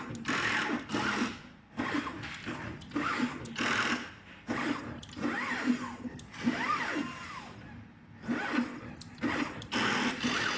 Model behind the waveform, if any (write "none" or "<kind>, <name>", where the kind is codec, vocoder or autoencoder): none